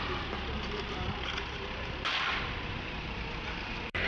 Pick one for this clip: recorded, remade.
remade